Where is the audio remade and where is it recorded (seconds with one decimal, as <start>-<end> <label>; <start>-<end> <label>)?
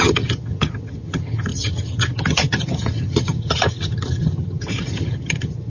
0.0-5.7 remade